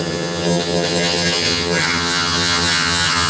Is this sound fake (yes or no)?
yes